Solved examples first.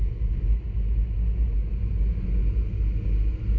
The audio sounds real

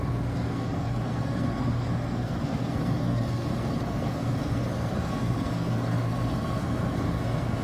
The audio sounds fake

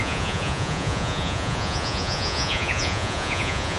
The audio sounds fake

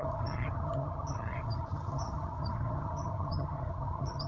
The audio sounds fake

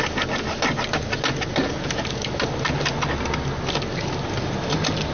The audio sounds real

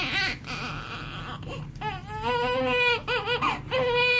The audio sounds real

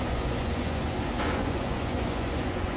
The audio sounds fake